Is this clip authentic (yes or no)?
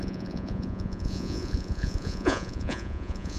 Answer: no